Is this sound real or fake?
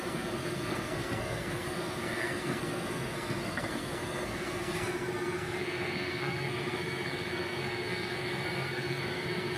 fake